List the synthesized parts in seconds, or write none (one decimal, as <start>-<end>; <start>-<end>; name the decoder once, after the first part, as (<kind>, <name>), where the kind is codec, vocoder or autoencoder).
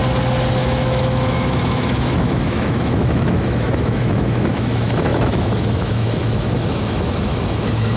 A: 0.6-8.0 (autoencoder, DAC-VAE)